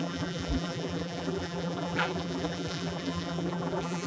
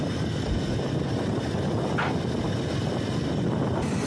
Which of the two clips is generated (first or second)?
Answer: first